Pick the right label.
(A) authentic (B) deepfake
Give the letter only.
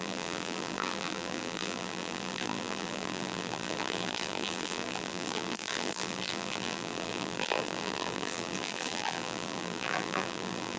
B